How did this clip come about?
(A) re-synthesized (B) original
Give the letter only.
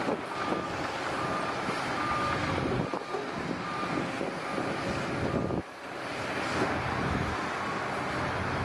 B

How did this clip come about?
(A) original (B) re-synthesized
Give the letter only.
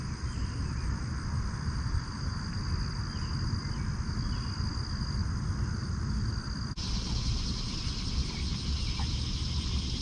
A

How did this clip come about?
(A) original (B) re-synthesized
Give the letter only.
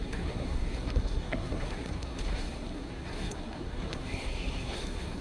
B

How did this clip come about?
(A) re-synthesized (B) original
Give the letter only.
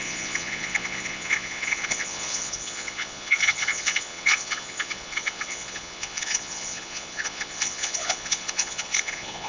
A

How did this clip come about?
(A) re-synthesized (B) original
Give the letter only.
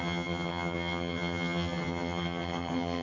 A